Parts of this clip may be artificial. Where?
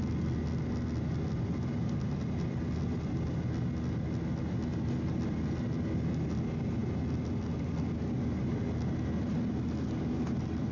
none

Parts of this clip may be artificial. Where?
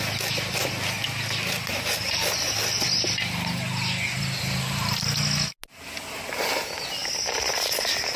none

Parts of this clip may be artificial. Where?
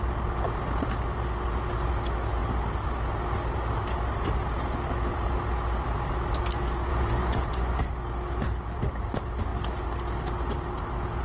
6.9-7.8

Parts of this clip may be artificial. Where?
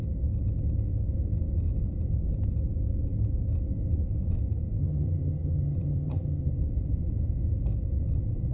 4.8-6.5